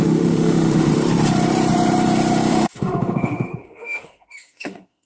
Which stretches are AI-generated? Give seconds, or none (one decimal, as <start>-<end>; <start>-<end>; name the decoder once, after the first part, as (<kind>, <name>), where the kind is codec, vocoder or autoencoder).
0.0-0.9 (autoencoder, DAC-VAE); 2.5-5.1